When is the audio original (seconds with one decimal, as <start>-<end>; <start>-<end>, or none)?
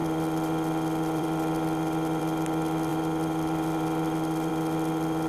2.2-2.9; 4.5-5.3